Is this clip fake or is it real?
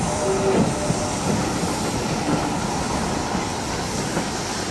real